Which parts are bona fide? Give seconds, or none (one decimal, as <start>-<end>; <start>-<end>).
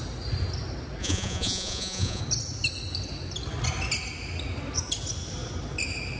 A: 0.0-1.0; 2.2-6.2